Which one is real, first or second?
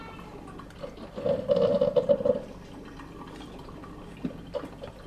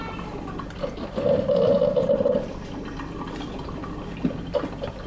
first